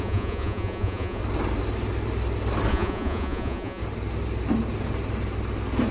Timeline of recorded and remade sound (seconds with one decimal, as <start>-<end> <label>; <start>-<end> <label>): 0.0-1.2 remade; 1.2-2.7 recorded; 2.7-3.8 remade; 3.8-5.9 recorded